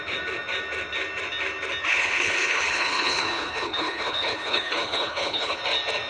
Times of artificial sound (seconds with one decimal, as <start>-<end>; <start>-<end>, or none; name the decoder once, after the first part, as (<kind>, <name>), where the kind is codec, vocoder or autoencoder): 1.9-5.6 (codec, HILCodec)